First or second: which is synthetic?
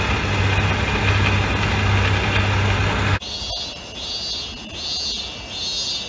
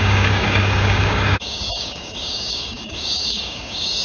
second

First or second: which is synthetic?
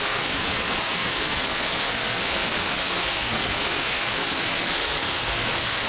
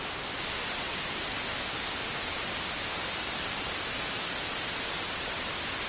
first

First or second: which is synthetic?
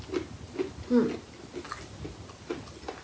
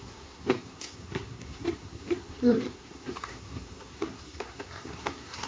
second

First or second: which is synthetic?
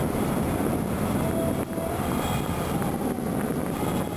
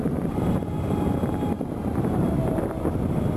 second